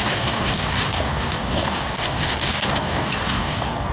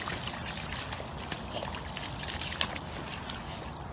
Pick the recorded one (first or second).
second